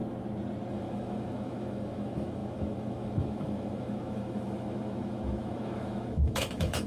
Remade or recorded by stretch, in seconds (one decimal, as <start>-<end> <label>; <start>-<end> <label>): 0.0-0.7 recorded; 0.7-6.9 remade

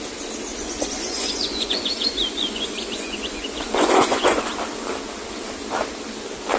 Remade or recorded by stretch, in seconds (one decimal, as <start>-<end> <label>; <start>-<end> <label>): 0.0-0.5 recorded; 0.5-4.5 remade; 4.5-6.6 recorded

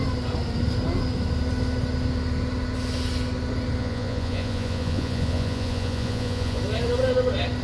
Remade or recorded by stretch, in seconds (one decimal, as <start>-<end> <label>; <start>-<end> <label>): 0.0-3.8 recorded; 3.8-6.6 remade; 6.6-7.6 recorded

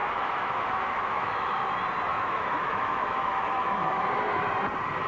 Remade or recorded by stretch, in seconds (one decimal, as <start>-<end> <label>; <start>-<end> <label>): 0.0-1.7 remade; 1.7-2.1 recorded; 2.1-4.1 remade; 4.1-5.1 recorded

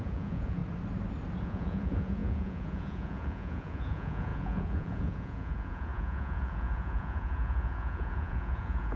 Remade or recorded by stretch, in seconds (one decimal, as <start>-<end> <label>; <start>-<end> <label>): 0.0-0.6 remade; 0.6-1.4 recorded; 1.4-9.0 remade

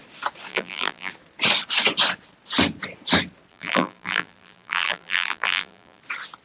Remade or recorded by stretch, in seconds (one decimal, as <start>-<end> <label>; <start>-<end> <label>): 0.0-0.5 recorded; 0.5-1.1 remade; 1.1-3.5 recorded; 3.5-6.0 remade; 6.0-6.4 recorded

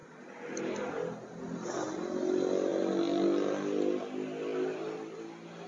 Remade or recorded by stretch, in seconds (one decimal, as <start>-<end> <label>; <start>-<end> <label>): 0.0-5.7 recorded